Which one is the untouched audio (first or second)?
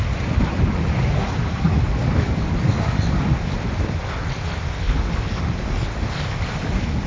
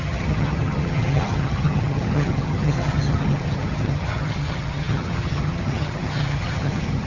first